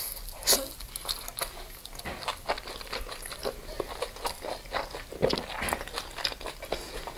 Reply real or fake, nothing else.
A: real